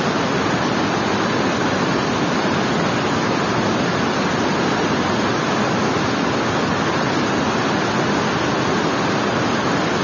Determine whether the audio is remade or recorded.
recorded